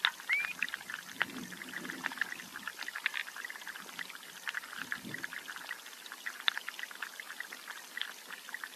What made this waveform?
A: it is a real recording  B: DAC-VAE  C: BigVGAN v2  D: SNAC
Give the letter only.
A